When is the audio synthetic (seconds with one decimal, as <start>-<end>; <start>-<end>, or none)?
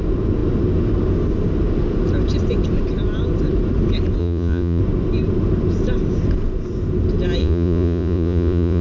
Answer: 4.2-4.8; 7.4-8.8